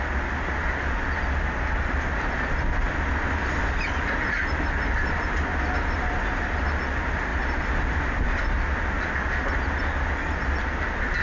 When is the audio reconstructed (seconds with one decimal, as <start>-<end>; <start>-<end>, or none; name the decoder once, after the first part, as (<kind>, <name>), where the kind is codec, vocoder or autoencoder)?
none